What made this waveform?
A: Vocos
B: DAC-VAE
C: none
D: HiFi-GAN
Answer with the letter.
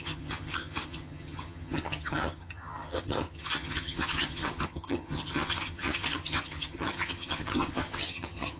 D